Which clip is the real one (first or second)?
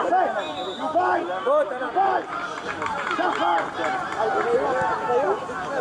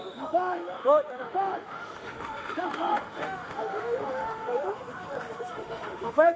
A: first